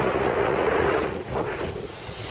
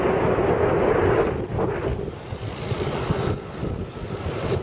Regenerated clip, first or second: first